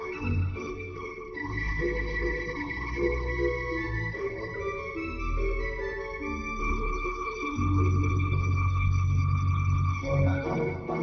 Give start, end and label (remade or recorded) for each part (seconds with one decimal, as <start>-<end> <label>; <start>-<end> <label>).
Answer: 0.0-3.3 remade; 3.3-4.1 recorded; 4.1-4.5 remade; 4.5-6.6 recorded; 6.6-11.0 remade